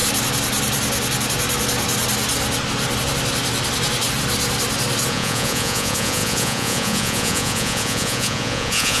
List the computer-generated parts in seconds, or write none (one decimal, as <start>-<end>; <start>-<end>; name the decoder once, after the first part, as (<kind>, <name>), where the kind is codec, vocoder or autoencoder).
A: 5.1-9.0 (vocoder, Vocos)